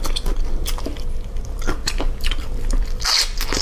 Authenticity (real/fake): real